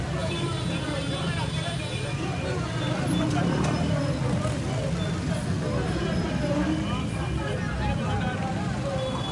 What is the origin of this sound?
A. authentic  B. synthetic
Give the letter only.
A